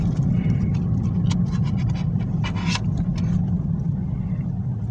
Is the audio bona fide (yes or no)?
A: yes